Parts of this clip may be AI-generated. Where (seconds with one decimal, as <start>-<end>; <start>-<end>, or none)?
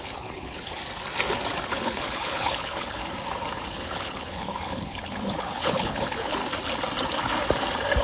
0.0-0.8; 1.7-3.0; 3.6-6.4